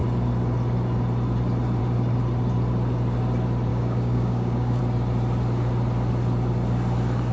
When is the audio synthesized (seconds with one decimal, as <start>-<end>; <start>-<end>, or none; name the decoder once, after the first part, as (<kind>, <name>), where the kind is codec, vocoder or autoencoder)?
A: 3.7-4.8 (codec, DAC)